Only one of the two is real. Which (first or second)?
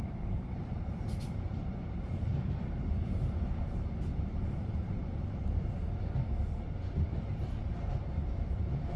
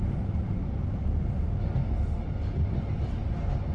second